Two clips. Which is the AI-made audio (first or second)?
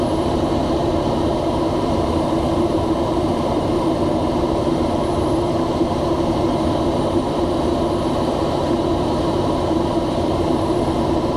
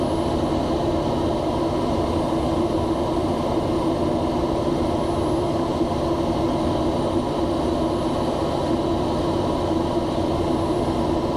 first